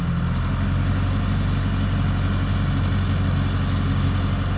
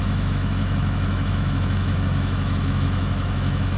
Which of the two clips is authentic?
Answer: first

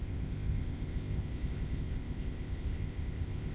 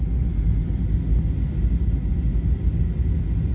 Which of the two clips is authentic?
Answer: second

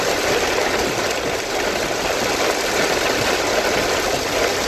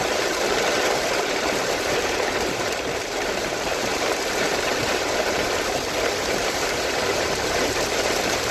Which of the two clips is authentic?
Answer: first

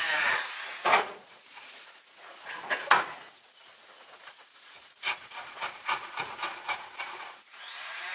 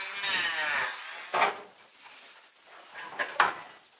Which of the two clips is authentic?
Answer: second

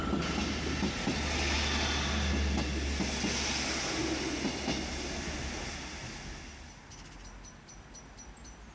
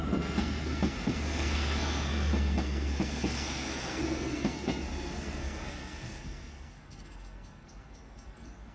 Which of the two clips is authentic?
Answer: first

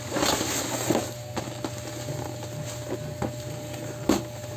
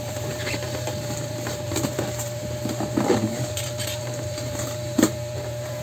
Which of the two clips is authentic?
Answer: first